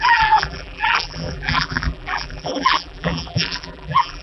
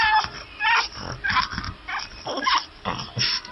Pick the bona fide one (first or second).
second